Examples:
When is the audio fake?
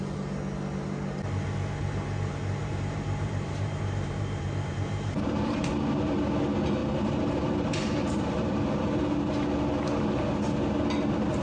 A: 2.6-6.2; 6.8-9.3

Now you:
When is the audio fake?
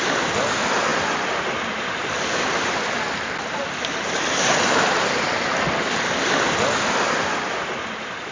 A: none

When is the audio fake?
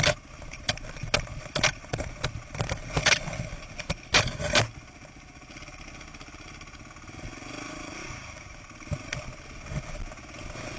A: 7.9-8.5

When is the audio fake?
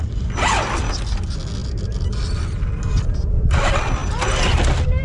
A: none